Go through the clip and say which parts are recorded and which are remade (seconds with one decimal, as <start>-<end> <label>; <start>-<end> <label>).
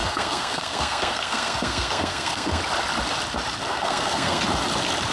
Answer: 0.0-2.6 remade; 2.6-3.6 recorded; 3.6-4.4 remade; 4.4-5.1 recorded